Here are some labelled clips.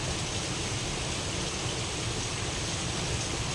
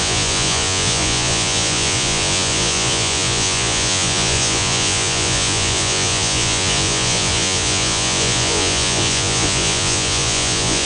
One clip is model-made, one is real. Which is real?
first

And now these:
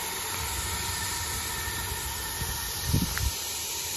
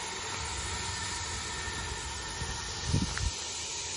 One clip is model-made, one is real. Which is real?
second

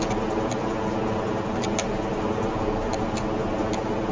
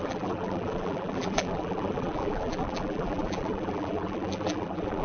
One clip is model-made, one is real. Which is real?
first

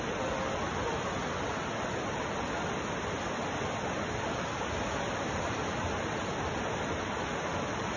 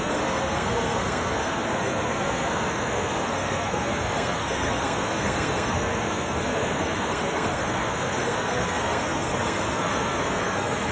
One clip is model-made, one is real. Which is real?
first